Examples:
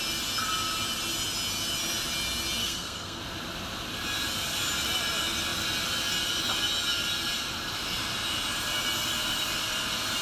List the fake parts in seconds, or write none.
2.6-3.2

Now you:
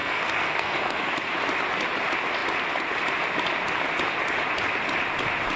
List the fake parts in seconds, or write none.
0.0-1.1